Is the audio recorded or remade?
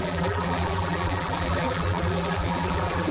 remade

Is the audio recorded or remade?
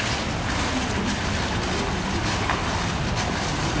recorded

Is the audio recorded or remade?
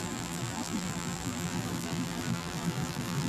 remade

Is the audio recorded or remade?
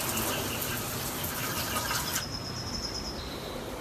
recorded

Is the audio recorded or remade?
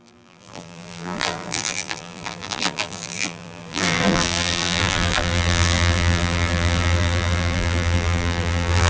remade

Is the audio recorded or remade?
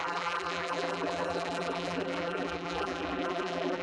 remade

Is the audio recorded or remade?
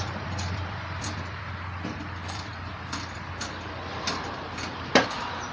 remade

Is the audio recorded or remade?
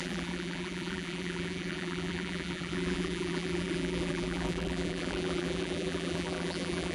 remade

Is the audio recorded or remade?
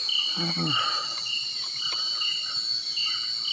recorded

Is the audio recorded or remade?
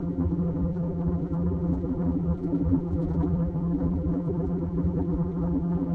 remade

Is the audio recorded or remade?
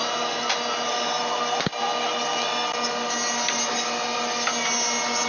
recorded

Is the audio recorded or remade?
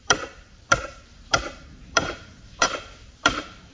remade